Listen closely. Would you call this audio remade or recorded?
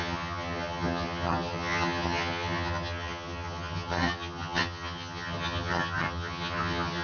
remade